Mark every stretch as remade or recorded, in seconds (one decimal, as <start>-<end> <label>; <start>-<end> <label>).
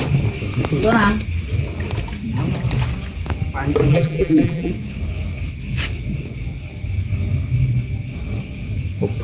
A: 0.0-3.9 recorded; 3.9-4.7 remade; 4.7-9.2 recorded